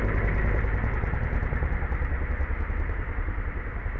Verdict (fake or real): fake